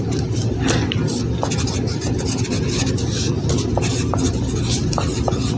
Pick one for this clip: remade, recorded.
recorded